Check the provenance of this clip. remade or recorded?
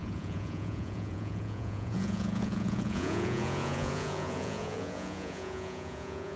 remade